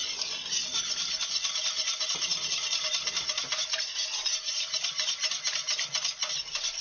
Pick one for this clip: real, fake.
real